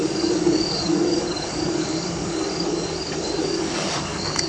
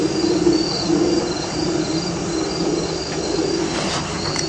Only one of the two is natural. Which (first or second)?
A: second